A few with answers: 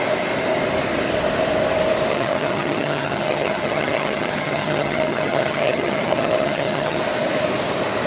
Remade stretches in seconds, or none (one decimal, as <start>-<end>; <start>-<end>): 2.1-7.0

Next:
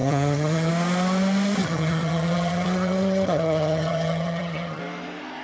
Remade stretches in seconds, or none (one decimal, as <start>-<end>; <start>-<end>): 0.0-0.7; 1.6-4.8

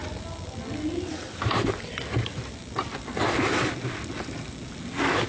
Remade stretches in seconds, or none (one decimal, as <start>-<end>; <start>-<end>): none